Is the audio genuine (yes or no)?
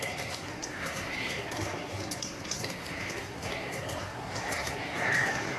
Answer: no